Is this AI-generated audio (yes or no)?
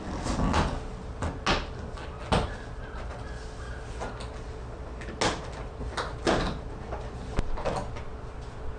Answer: no